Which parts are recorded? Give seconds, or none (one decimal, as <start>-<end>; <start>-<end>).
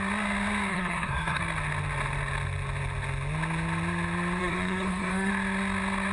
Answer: 0.0-0.7; 1.4-4.4; 5.3-6.1